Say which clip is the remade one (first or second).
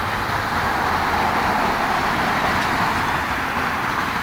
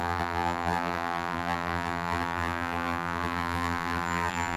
second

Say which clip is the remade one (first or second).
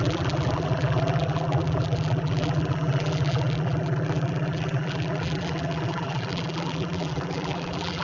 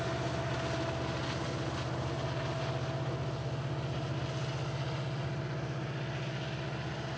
first